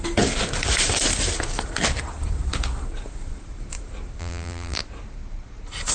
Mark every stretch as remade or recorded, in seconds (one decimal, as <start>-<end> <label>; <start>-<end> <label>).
0.0-4.2 recorded; 4.2-4.8 remade; 4.8-5.9 recorded